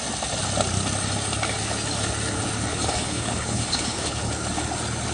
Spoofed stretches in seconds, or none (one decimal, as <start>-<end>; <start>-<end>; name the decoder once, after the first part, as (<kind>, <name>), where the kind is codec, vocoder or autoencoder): 2.7-4.3 (codec, HILCodec)